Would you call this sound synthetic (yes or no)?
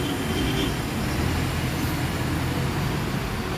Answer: no